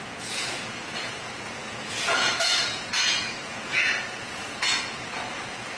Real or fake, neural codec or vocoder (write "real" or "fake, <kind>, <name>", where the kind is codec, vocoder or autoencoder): fake, vocoder, Vocos